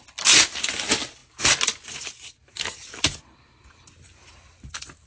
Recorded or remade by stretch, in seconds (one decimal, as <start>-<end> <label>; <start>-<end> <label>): 0.0-5.1 recorded